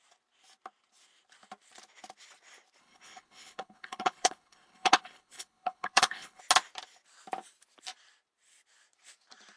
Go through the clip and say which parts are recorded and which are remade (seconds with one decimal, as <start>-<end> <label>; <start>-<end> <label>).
0.0-2.8 recorded; 2.8-6.4 remade; 6.4-9.6 recorded